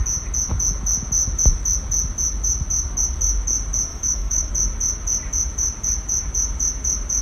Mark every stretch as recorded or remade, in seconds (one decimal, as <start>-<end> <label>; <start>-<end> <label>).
0.0-3.9 recorded; 3.9-4.5 remade; 4.5-7.2 recorded